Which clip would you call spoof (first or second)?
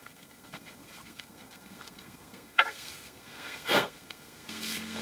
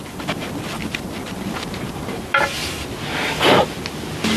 first